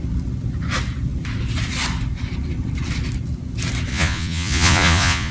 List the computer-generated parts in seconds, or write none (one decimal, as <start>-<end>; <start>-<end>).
3.9-5.3

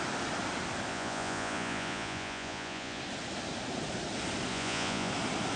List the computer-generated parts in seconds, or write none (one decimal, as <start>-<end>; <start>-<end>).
0.9-3.0; 4.5-5.1

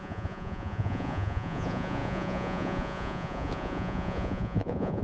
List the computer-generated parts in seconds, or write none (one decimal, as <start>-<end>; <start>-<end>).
0.0-5.0

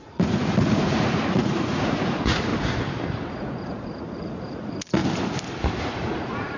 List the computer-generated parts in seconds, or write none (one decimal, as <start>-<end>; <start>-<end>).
0.0-2.5; 3.3-5.0; 5.8-6.6

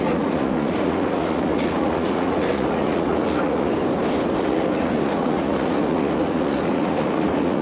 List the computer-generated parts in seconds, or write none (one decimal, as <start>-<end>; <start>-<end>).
0.0-3.7; 4.4-7.6